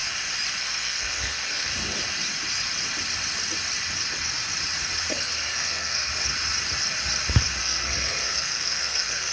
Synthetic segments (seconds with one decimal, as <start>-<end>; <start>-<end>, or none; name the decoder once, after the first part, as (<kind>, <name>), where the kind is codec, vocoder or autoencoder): 0.6-1.7 (codec, SNAC); 5.1-6.1; 7.6-9.3